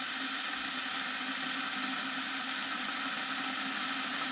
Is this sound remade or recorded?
recorded